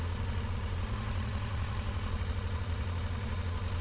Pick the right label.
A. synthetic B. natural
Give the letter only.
A